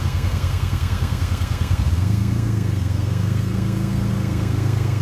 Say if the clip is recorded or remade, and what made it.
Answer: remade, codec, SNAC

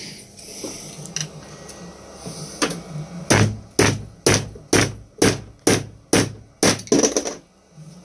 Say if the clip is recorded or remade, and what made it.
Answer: recorded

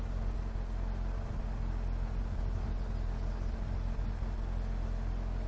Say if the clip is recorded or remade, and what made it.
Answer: recorded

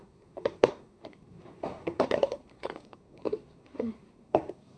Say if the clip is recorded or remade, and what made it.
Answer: remade, codec, SNAC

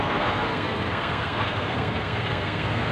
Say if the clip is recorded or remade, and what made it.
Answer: remade, codec, SNAC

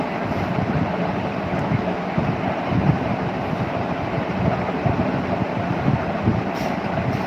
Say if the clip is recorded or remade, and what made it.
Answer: recorded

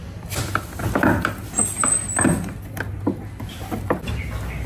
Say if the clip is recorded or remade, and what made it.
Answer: recorded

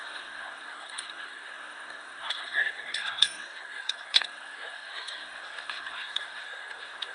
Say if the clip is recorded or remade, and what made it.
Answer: remade, codec, SNAC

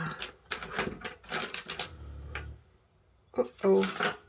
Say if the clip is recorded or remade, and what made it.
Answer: recorded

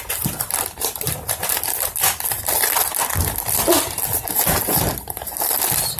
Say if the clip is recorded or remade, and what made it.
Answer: recorded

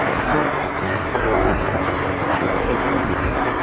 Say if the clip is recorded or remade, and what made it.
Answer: remade, codec, SNAC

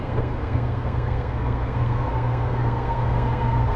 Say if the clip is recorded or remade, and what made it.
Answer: remade, codec, SNAC